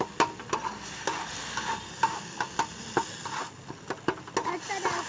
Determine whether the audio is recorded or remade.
recorded